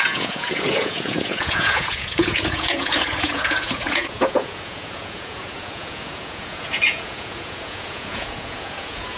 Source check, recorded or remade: remade